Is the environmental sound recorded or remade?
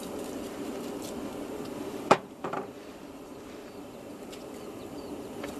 remade